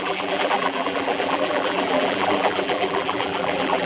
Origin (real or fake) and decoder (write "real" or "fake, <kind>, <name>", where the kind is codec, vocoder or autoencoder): fake, vocoder, BigVGAN v2